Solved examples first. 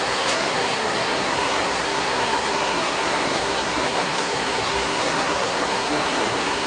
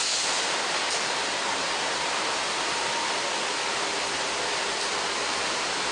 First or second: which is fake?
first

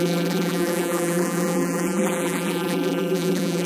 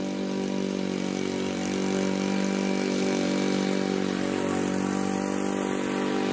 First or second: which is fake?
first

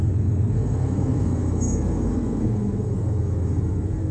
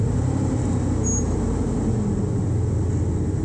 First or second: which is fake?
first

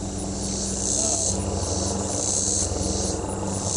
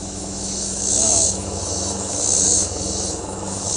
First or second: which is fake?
second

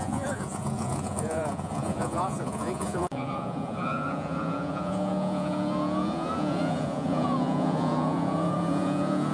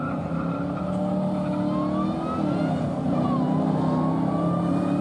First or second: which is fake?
first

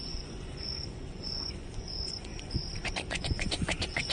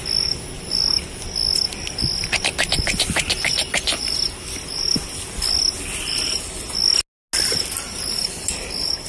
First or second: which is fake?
first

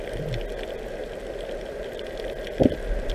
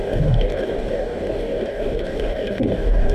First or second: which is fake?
second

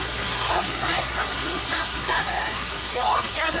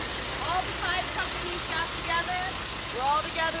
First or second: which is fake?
first